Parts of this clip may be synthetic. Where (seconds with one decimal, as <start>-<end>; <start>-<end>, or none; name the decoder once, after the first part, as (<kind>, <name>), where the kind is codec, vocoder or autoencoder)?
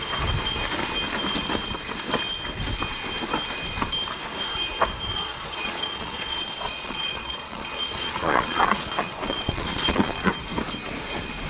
5.1-10.3 (vocoder, Vocos)